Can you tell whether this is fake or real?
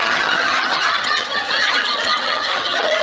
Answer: fake